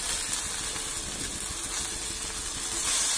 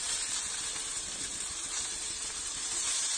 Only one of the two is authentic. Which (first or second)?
first